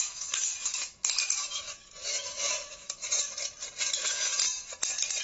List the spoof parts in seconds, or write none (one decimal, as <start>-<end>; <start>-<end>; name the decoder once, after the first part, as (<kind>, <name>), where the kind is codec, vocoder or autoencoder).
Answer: 0.0-3.0 (autoencoder, DAC-VAE); 3.9-4.3

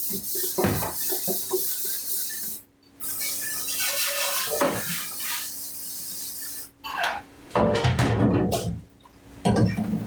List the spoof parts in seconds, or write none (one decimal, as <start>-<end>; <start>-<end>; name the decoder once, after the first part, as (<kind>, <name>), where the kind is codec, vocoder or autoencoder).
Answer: 6.9-8.2 (autoencoder, DAC-VAE)

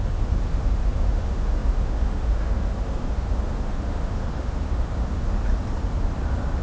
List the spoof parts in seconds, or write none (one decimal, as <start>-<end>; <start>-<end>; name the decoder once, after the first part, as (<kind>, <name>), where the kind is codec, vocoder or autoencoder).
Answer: 0.0-5.5 (autoencoder, DAC-VAE)